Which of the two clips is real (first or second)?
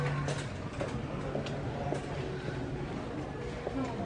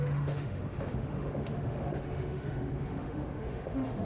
first